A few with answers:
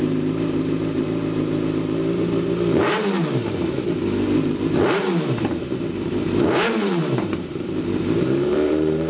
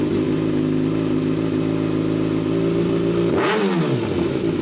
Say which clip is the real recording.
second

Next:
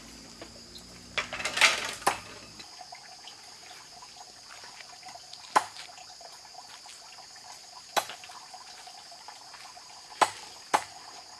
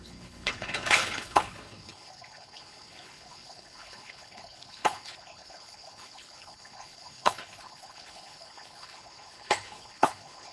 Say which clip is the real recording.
first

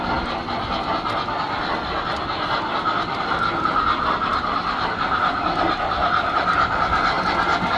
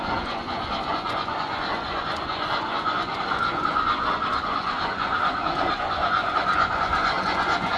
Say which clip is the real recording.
first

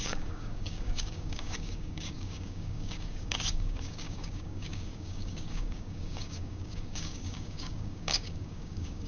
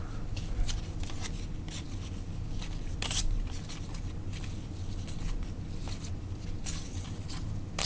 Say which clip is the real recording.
second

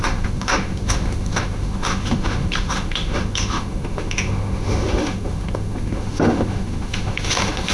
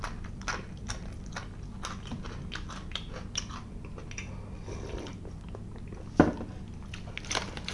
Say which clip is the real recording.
second